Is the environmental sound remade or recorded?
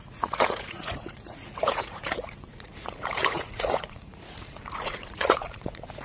remade